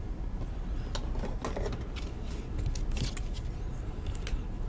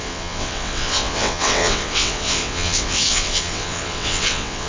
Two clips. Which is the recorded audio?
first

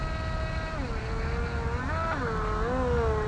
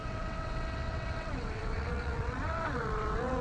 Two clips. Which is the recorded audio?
first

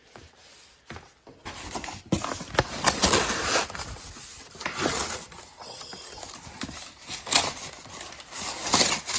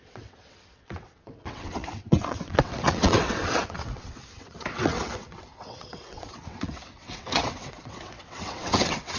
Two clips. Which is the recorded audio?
first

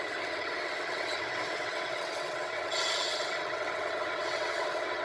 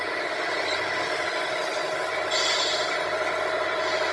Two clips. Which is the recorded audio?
second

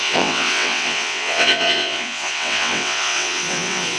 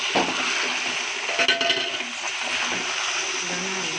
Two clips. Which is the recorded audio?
second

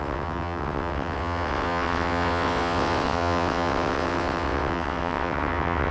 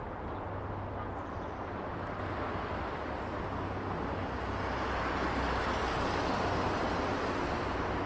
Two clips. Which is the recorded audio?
second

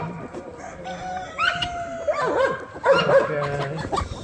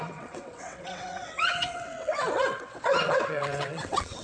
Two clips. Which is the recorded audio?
first